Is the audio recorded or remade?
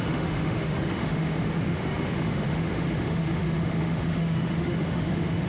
remade